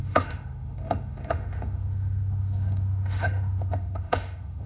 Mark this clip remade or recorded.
remade